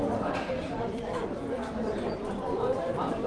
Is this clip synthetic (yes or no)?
yes